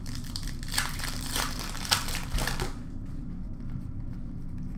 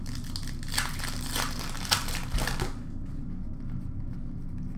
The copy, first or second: first